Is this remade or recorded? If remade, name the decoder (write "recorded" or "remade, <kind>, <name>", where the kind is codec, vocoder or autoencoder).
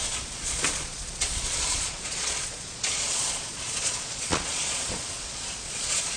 remade, vocoder, Vocos